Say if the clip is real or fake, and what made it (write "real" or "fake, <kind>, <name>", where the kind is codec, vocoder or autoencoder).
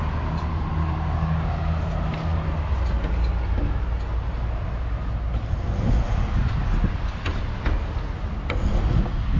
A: real